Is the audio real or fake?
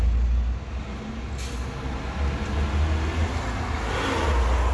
real